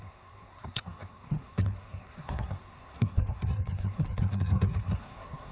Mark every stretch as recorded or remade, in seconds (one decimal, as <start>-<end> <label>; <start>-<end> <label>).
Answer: 0.0-5.5 remade